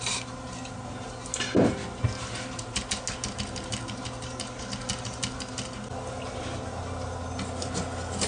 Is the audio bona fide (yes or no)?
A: yes